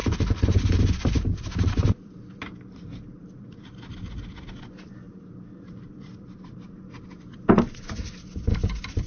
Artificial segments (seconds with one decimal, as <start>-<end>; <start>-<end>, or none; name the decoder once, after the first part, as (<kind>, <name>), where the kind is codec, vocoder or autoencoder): 0.0-2.2 (vocoder, BigVGAN v2); 8.5-9.1